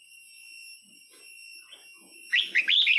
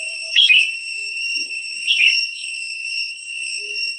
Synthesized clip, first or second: second